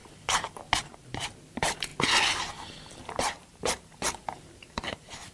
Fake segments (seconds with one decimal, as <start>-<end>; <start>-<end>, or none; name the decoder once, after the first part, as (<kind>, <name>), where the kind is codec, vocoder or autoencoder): 1.5-1.9 (vocoder, BigVGAN v2); 3.2-5.3

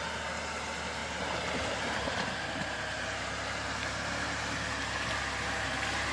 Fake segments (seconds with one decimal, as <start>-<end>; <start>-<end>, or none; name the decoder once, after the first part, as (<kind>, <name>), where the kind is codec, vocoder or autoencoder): 1.0-4.7 (vocoder, BigVGAN v2)

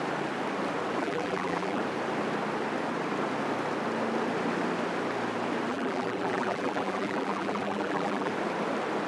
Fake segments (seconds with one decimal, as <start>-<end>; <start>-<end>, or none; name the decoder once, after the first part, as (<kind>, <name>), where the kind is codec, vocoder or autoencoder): 1.0-1.8 (vocoder, BigVGAN v2); 5.7-8.3

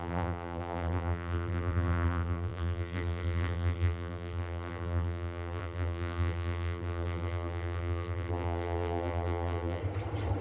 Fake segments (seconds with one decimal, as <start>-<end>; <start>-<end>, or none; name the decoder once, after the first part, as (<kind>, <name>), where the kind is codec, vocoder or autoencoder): 0.0-9.8 (vocoder, BigVGAN v2)

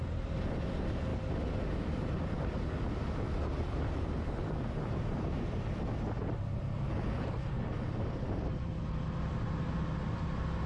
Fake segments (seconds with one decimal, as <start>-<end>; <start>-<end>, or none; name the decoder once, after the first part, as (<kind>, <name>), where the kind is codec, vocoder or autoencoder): 0.0-1.1 (vocoder, BigVGAN v2); 2.4-10.7